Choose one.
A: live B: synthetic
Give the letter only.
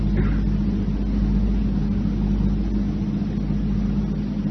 A